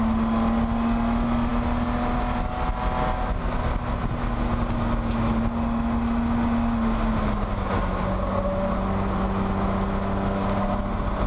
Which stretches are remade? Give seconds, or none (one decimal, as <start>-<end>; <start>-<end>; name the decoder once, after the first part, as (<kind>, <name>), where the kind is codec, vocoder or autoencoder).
none